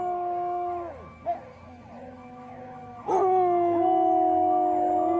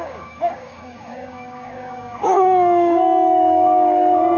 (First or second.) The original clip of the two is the first